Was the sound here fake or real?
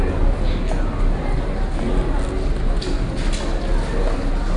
real